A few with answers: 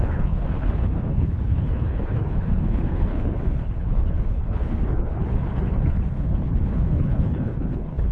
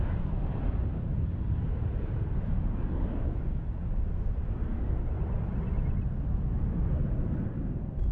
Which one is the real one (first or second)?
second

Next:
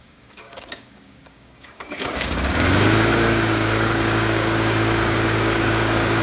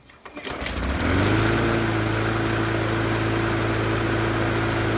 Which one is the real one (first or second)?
second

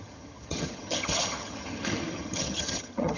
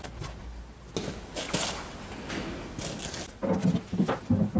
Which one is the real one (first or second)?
second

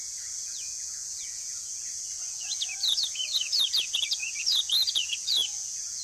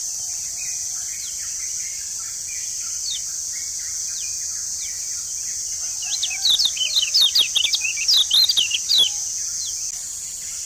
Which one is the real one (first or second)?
second